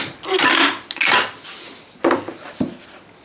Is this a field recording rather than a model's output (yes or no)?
yes